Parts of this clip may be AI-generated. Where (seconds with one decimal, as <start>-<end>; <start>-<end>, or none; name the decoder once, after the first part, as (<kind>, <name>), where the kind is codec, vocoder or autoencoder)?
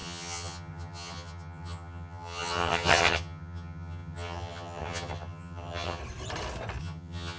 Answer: 0.0-6.0 (vocoder, HiFi-GAN); 6.8-7.4